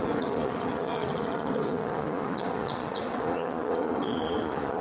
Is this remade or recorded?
remade